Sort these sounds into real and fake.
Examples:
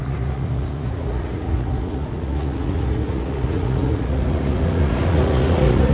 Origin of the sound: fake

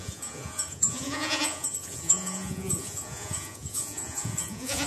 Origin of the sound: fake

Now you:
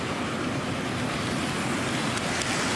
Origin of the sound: real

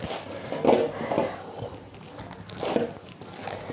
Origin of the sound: real